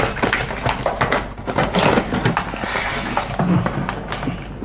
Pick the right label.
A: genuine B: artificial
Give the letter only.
A